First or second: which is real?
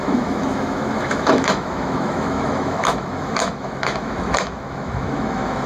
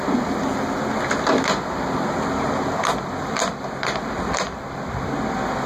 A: second